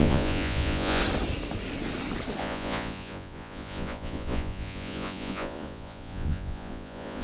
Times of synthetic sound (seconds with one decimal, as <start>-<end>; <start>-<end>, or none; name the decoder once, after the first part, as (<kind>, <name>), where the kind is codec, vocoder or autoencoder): 0.0-1.0 (vocoder, Vocos); 2.4-7.2